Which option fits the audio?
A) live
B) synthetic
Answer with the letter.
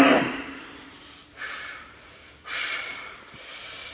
A